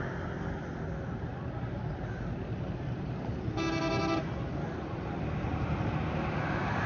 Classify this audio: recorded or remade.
recorded